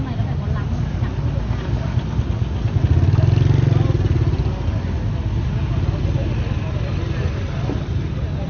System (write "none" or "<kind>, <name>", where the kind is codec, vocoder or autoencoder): none